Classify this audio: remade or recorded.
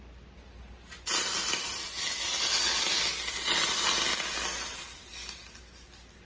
recorded